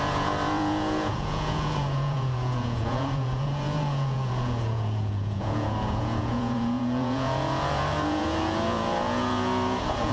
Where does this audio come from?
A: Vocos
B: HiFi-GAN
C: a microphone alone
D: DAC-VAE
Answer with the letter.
A